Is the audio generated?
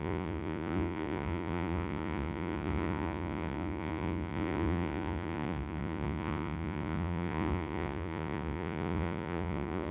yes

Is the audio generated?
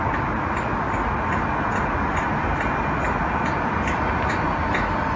no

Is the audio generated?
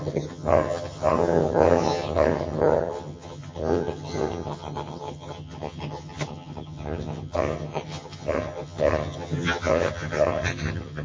yes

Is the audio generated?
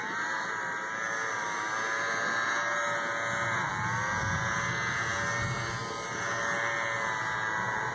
no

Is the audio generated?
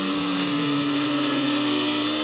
yes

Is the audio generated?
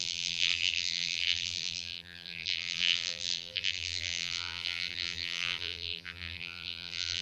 yes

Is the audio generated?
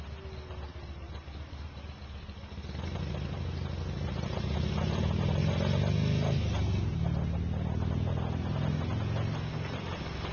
no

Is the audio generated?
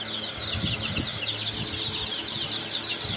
no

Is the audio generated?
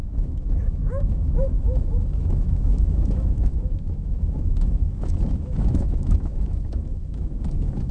yes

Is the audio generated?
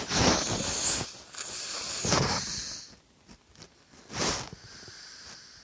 no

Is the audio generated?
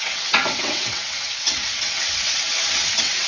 yes